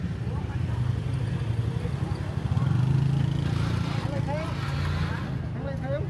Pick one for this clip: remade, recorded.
recorded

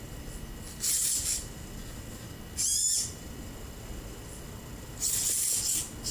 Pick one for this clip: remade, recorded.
recorded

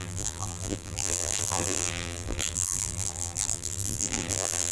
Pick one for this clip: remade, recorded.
remade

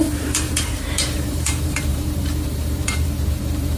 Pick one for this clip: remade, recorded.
remade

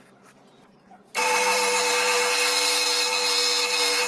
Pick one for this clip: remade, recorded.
remade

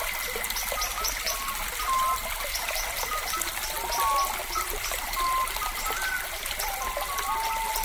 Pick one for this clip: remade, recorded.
recorded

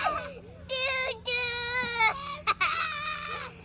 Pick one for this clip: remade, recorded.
recorded